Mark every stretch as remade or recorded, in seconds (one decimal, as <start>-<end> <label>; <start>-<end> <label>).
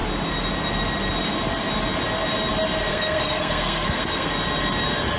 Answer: 0.0-2.9 recorded; 2.9-4.3 remade; 4.3-5.2 recorded